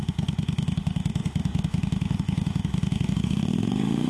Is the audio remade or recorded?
remade